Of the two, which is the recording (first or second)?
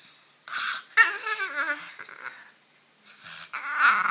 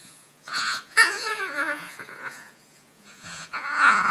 first